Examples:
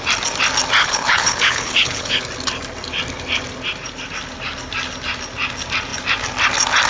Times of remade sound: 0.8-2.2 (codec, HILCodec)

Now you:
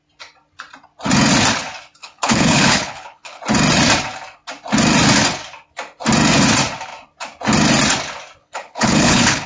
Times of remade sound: 2.0-3.4 (codec, HILCodec); 8.4-9.5

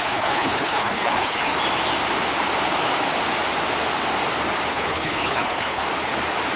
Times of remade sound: 0.0-1.5 (codec, HILCodec); 4.7-5.8

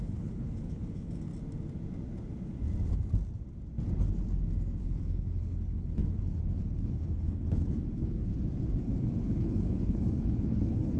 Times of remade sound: 0.0-1.3 (codec, HILCodec); 4.8-8.3; 9.2-11.0

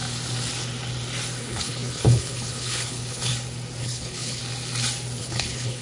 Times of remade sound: 1.4-3.3 (codec, HILCodec); 3.8-4.4; 5.2-5.8

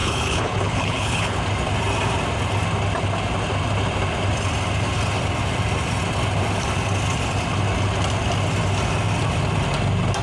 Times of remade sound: 0.0-1.4 (codec, HILCodec)

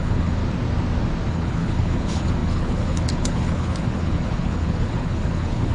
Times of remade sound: 0.0-0.4 (codec, HILCodec); 1.3-5.7

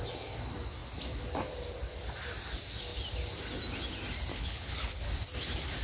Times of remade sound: 4.3-5.0 (codec, HILCodec)